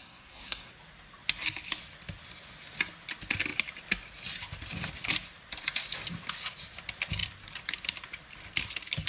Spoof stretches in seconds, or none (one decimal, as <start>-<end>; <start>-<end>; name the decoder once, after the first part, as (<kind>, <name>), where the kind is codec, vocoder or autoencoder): 0.0-0.7 (codec, SNAC)